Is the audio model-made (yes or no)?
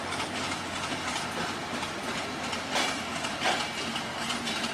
no